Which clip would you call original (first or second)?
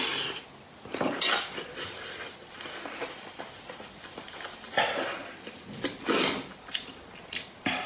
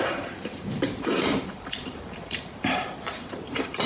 first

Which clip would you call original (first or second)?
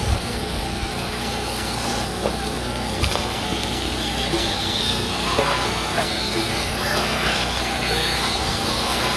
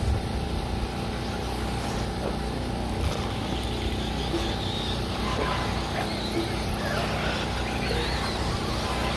second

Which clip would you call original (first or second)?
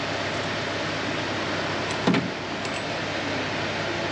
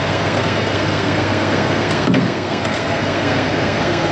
first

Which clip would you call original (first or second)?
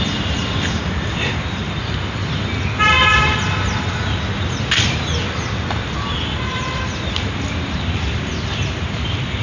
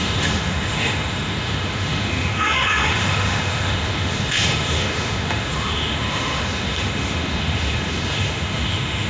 first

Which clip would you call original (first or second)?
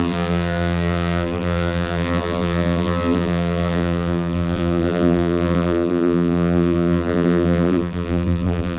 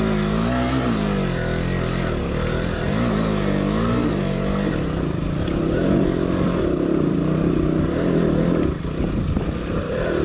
second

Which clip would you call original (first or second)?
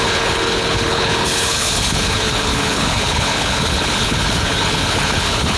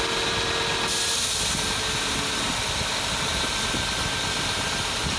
second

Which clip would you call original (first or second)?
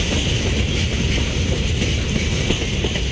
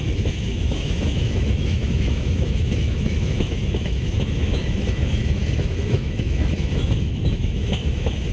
first